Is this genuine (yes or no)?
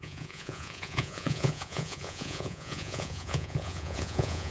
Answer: no